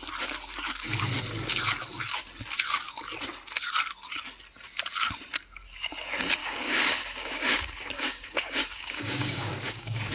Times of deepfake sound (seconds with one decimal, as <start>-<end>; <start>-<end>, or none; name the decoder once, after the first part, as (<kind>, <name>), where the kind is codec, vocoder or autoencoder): 6.4-10.1 (codec, DAC)